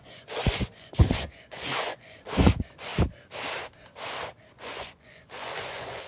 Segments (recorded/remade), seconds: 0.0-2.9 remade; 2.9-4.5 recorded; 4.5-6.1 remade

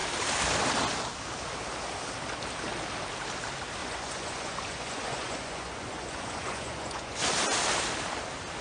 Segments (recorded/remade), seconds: 0.0-3.8 recorded; 3.8-7.3 remade; 7.3-8.6 recorded

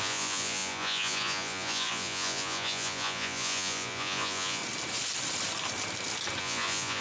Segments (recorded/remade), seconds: 0.0-4.6 remade; 4.6-6.4 recorded; 6.4-7.0 remade